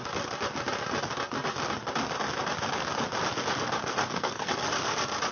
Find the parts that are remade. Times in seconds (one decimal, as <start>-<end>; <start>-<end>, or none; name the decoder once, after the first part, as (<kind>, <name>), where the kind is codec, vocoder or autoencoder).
3.8-4.6 (codec, SNAC)